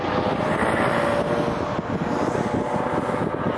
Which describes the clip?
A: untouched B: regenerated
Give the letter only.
A